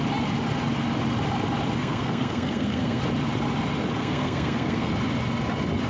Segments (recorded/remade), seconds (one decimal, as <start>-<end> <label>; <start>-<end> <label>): 0.0-1.8 recorded; 1.8-3.0 remade; 3.0-4.0 recorded; 4.0-4.9 remade; 4.9-5.9 recorded